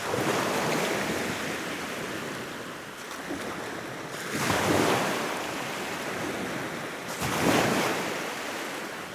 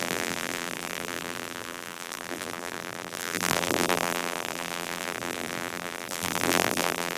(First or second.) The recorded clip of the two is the first